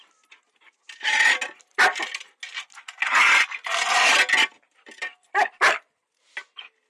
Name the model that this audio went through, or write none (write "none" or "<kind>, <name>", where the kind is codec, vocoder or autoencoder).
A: none